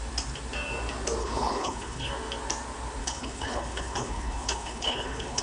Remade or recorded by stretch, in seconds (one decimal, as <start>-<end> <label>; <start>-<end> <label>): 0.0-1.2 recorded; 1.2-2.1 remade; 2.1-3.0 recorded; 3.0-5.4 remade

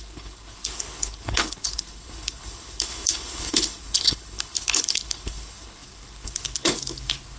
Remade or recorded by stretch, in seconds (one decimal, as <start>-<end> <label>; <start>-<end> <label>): 0.0-7.4 remade

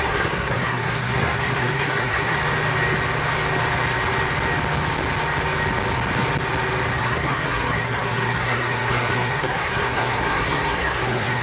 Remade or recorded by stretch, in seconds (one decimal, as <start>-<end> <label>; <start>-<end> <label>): 0.0-2.4 remade; 2.4-7.0 recorded; 7.0-11.4 remade

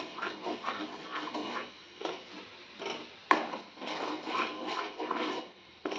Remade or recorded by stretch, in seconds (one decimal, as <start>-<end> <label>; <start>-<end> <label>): 0.0-2.3 remade; 2.3-3.5 recorded; 3.5-6.0 remade

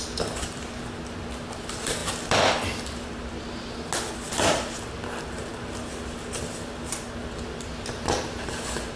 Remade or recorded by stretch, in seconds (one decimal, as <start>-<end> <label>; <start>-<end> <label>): 0.0-9.0 recorded

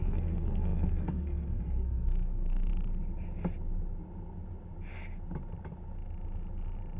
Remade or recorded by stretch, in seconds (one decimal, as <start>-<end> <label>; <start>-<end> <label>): 0.0-2.7 remade; 2.7-7.0 recorded

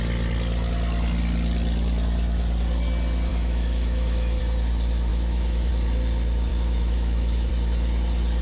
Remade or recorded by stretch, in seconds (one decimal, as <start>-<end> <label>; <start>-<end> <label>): 0.0-3.3 recorded; 3.3-4.4 remade; 4.4-5.1 recorded; 5.1-5.7 remade; 5.7-6.5 recorded; 6.5-7.5 remade; 7.5-8.4 recorded

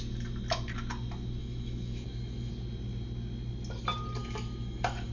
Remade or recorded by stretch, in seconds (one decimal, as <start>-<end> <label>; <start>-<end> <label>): 0.0-1.4 recorded; 1.4-2.5 remade; 2.5-4.2 recorded; 4.2-5.1 remade